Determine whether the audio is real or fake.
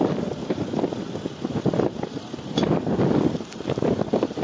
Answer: fake